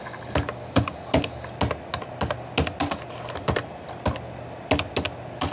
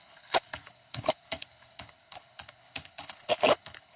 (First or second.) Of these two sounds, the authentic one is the first